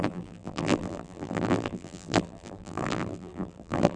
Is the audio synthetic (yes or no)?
yes